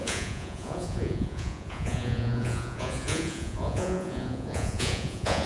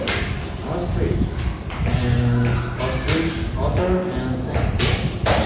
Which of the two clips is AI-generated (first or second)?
first